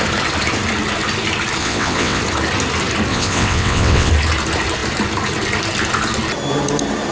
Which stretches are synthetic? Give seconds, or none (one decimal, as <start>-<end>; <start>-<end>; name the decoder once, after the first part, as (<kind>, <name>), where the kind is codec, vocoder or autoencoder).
1.6-2.2 (vocoder, WaveNeXt); 3.1-4.1